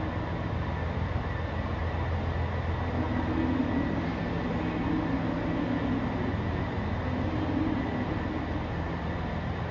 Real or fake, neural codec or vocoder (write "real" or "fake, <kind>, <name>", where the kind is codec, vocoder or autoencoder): real